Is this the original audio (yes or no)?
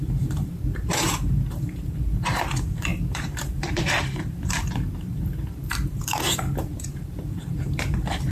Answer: no